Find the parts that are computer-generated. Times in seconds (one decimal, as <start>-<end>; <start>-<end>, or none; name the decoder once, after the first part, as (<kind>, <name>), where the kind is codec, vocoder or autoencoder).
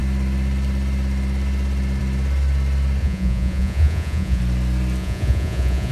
3.0-4.4 (vocoder, Vocos); 5.0-5.9